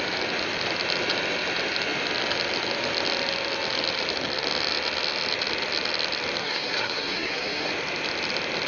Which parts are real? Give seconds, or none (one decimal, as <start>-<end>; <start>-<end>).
0.0-6.4; 7.7-8.7